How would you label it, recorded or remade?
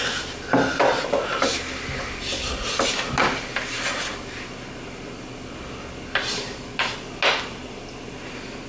recorded